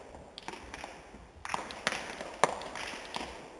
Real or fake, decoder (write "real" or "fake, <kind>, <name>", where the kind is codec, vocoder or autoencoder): real